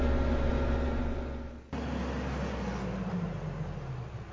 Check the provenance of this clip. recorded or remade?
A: recorded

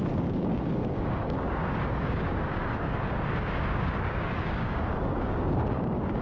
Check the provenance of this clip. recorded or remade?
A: remade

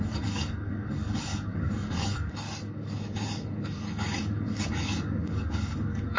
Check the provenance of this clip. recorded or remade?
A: remade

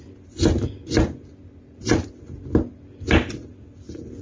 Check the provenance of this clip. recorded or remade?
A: recorded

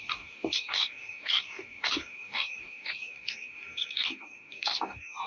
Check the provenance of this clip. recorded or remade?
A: remade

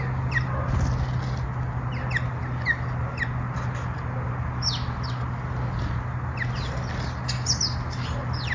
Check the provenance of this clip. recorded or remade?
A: recorded